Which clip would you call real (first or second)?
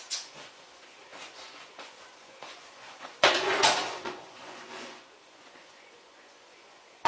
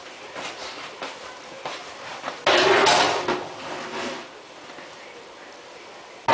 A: second